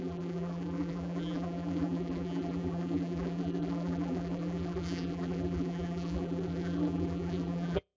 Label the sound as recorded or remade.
remade